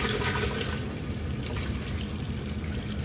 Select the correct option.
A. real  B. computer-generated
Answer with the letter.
A